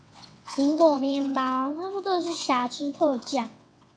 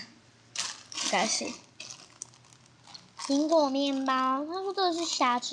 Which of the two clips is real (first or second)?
second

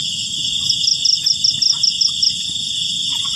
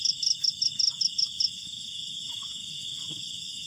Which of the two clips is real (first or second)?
first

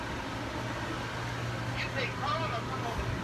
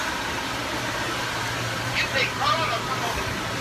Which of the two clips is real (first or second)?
first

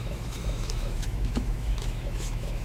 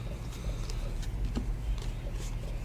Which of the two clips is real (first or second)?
second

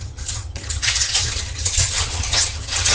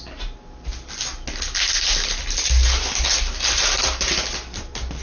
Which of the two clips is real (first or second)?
second